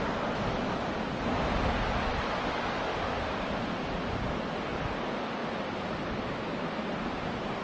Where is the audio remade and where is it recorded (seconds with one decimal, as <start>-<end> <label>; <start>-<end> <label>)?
0.0-2.9 recorded; 2.9-3.7 remade; 3.7-7.6 recorded